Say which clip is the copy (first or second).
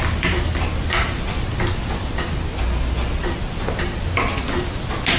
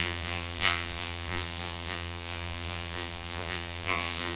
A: second